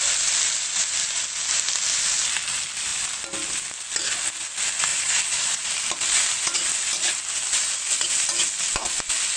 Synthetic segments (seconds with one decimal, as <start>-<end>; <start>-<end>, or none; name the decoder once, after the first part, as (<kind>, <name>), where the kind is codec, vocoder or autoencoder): 4.9-5.7 (vocoder, Vocos)